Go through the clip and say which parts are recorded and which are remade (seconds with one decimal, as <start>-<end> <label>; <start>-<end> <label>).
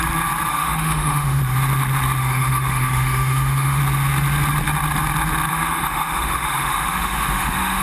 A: 0.0-0.5 recorded; 0.5-1.4 remade; 1.4-2.2 recorded; 2.2-3.8 remade; 3.8-5.5 recorded; 5.5-7.8 remade